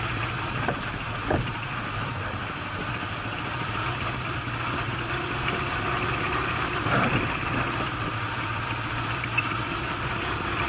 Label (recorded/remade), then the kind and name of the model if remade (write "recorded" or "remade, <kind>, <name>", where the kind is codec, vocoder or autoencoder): remade, vocoder, BigVGAN v2